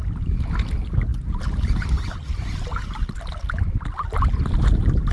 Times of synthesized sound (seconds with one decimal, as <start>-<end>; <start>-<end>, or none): none